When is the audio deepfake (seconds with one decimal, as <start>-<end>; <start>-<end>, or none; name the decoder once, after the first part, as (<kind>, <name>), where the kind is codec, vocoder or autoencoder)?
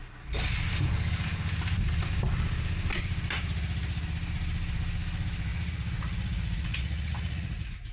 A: 5.5-7.9 (vocoder, Vocos)